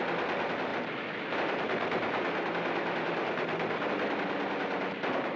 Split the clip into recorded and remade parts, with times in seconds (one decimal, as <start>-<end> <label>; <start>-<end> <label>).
0.0-5.4 recorded